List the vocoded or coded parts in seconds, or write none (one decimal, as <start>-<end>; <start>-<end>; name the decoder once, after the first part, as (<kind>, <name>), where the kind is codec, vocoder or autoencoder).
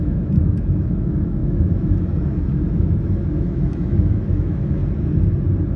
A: 0.0-4.8 (autoencoder, DAC-VAE)